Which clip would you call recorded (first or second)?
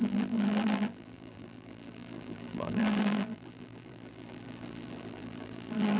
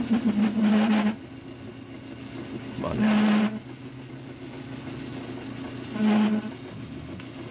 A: second